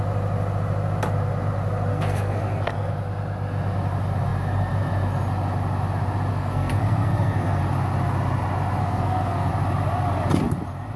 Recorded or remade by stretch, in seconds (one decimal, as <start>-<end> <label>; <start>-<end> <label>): 0.0-1.9 recorded; 1.9-2.9 remade; 2.9-6.3 recorded; 6.3-7.6 remade; 7.6-8.8 recorded; 8.8-9.5 remade; 9.5-11.0 recorded